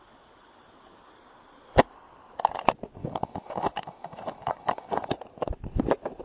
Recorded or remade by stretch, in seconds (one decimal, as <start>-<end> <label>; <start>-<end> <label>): 0.0-3.0 recorded; 3.0-5.1 remade; 5.1-6.2 recorded